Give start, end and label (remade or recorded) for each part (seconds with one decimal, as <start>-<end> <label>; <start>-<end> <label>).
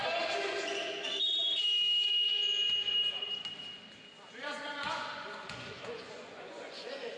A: 0.0-4.3 recorded; 4.3-7.2 remade